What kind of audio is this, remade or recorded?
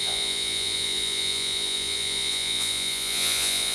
remade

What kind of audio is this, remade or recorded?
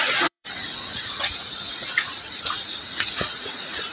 remade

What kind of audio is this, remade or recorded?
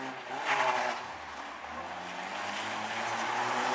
recorded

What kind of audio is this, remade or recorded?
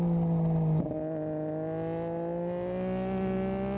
recorded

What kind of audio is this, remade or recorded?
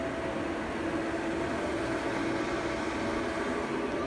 recorded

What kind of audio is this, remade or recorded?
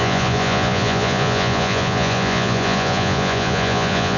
remade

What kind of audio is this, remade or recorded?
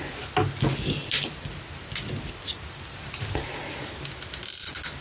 recorded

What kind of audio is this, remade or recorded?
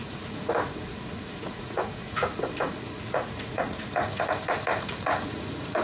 remade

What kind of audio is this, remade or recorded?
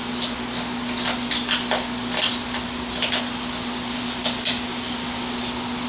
recorded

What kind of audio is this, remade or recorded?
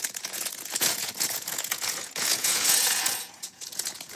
remade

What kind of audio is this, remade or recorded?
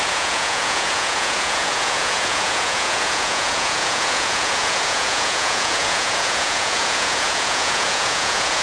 remade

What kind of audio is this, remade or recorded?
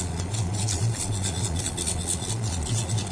remade